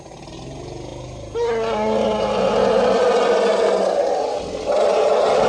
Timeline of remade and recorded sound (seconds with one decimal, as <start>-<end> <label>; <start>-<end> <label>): 0.0-5.5 recorded